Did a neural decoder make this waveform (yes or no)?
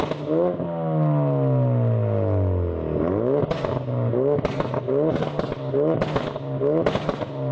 no